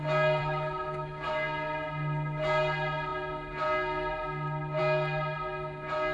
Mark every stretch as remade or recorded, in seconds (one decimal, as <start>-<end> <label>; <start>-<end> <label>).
0.0-0.4 recorded; 0.4-1.3 remade; 1.3-6.1 recorded